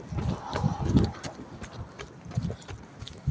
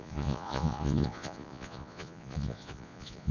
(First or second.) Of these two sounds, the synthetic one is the second